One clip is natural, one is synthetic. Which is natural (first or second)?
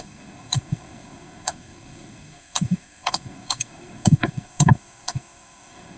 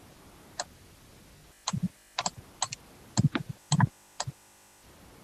second